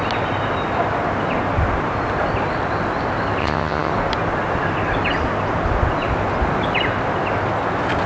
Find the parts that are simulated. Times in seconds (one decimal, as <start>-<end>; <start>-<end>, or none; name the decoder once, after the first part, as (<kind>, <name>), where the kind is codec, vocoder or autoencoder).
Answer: 3.4-3.9 (vocoder, HiFi-GAN)